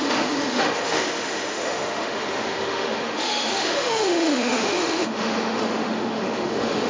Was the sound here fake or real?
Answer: fake